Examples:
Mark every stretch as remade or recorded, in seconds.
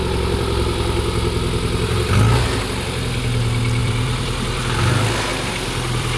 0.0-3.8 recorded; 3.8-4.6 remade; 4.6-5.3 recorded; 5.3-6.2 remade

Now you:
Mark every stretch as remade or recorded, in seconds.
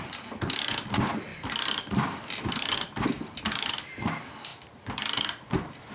0.0-1.3 recorded; 1.3-3.7 remade; 3.7-4.5 recorded; 4.5-5.0 remade; 5.0-5.9 recorded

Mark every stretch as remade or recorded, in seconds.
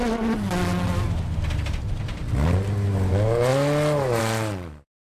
0.0-5.1 recorded